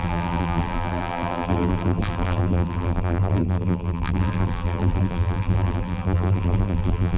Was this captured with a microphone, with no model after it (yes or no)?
no